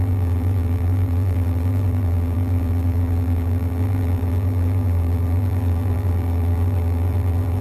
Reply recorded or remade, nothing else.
remade